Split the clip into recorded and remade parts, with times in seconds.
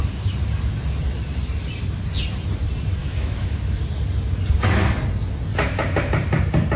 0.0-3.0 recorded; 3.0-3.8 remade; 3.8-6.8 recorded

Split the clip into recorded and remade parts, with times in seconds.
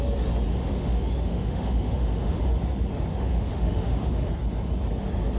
0.0-0.5 recorded; 0.5-2.4 remade; 2.4-3.1 recorded; 3.1-4.3 remade; 4.3-5.4 recorded